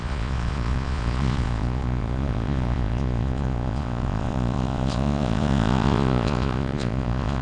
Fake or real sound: fake